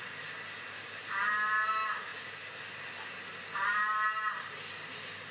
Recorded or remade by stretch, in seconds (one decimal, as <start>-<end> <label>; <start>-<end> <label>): 0.0-5.3 recorded